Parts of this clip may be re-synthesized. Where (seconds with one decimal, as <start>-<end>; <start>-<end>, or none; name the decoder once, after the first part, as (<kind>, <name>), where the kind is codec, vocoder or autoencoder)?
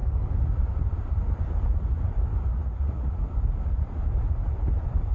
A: 2.5-3.2 (vocoder, Vocos)